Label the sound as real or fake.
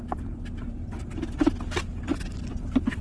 real